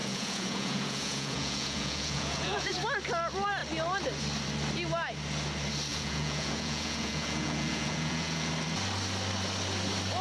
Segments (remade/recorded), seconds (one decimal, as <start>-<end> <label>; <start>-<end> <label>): 0.0-2.7 remade; 2.7-5.9 recorded; 5.9-8.5 remade; 8.5-10.2 recorded